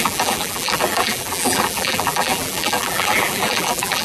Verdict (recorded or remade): remade